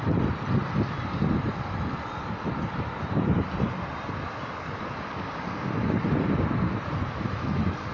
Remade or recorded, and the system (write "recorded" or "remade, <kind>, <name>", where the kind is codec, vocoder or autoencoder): recorded